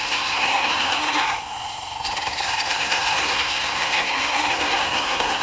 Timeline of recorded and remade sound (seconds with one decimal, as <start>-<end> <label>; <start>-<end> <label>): 0.0-5.4 remade